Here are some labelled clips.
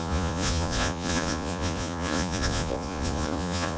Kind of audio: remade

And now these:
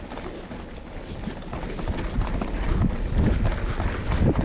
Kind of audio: recorded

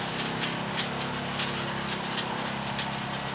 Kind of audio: recorded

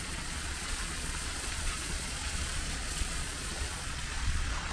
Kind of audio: remade